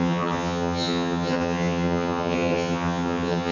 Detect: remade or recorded remade